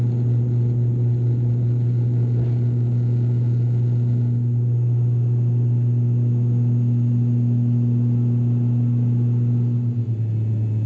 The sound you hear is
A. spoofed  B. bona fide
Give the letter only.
B